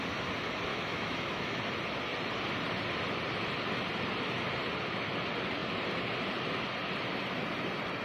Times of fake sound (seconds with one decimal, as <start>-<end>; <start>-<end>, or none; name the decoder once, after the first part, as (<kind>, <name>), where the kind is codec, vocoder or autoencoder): 0.7-1.6 (autoencoder, DAC-VAE)